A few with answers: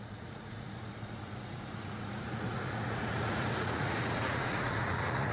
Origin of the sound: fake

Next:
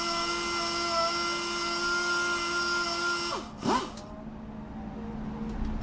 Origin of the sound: real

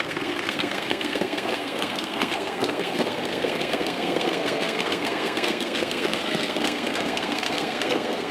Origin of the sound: fake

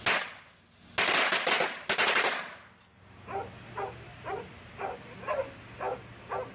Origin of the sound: real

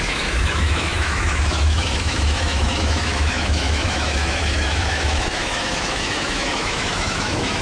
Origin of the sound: fake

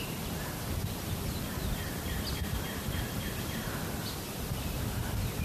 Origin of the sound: real